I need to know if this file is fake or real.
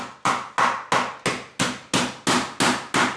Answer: real